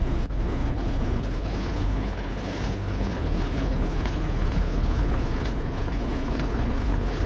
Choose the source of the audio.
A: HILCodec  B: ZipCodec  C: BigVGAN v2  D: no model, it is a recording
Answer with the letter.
A